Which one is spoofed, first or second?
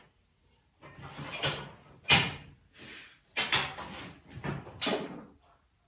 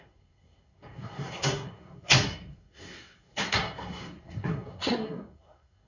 second